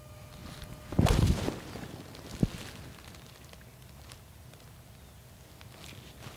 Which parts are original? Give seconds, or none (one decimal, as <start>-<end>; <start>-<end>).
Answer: 0.0-6.4